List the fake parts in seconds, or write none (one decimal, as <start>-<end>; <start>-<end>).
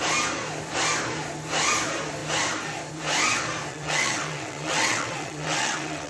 3.7-6.1